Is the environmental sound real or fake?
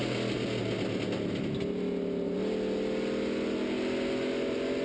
real